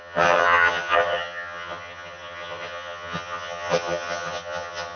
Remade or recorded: remade